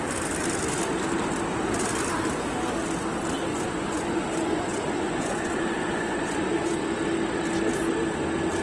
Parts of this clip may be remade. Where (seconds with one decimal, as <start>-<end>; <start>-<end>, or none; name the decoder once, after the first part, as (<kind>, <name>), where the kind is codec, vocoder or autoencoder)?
3.5-6.8 (vocoder, Vocos)